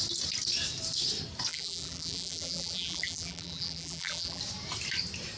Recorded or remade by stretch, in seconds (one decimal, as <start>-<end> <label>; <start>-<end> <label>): 0.0-1.5 recorded; 1.5-4.4 remade; 4.4-5.4 recorded